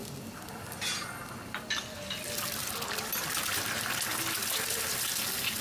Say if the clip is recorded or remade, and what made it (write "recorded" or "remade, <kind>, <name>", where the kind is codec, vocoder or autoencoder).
recorded